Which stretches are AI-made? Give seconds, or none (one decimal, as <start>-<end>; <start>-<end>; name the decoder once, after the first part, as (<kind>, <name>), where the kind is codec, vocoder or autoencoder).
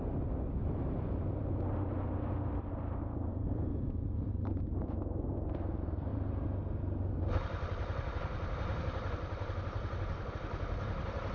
3.3-4.8 (vocoder, BigVGAN v2)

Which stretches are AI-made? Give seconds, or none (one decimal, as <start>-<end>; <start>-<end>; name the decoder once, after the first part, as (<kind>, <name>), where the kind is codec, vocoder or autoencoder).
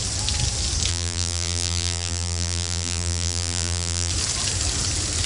0.9-4.1 (vocoder, BigVGAN v2)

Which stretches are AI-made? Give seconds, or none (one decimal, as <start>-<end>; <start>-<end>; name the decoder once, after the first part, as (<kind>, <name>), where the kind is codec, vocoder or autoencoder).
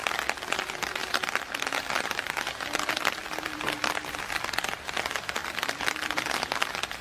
0.0-0.6 (vocoder, BigVGAN v2); 1.0-2.1; 3.2-4.2; 5.4-6.2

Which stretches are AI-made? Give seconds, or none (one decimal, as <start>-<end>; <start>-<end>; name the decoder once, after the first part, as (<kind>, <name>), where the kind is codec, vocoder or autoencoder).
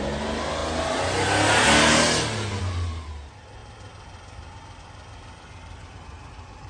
3.6-5.9 (vocoder, BigVGAN v2)